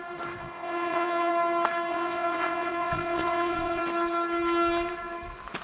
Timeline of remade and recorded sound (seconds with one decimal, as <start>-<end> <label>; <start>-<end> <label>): 0.0-0.4 recorded; 0.4-1.3 remade; 1.3-1.9 recorded; 1.9-3.8 remade; 3.8-5.6 recorded